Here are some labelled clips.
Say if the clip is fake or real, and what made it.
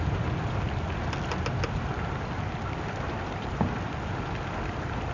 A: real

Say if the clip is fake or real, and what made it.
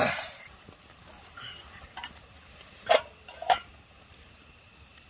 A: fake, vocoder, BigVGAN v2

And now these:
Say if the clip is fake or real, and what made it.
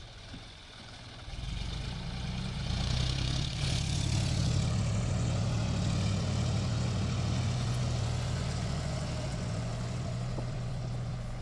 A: fake, vocoder, Vocos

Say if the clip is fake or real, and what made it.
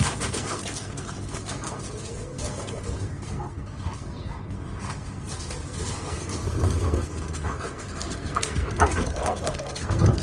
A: fake, codec, SNAC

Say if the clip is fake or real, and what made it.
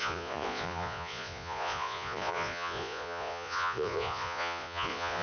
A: fake, vocoder, Vocos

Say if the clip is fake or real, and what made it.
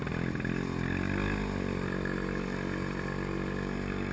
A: real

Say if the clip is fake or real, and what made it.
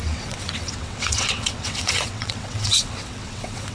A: fake, vocoder, WaveNeXt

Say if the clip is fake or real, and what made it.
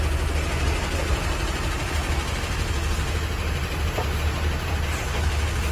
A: real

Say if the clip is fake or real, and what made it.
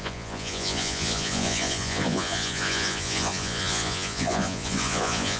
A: fake, vocoder, Vocos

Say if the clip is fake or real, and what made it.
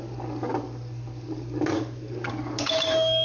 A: fake, codec, DAC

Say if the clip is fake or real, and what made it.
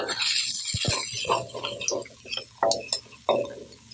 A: real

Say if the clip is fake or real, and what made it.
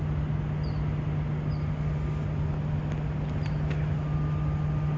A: real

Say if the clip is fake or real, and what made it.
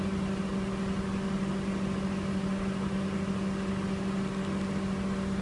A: real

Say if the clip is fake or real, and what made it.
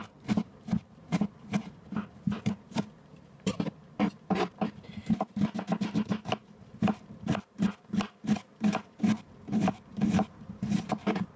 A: fake, vocoder, BigVGAN v2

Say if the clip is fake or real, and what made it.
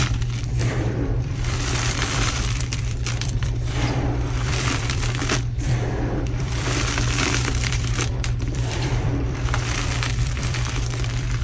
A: fake, vocoder, BigVGAN v2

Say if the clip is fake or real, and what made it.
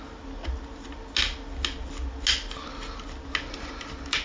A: real